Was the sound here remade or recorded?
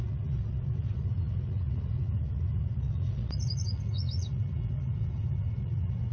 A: remade